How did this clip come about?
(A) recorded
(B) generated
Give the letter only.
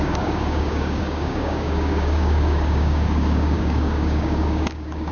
B